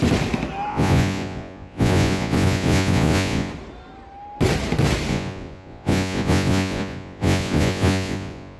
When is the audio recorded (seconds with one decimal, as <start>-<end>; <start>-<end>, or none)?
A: 0.0-0.7; 3.5-5.1